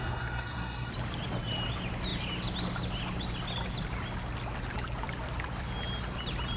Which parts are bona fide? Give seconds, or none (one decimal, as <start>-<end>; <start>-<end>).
0.9-6.6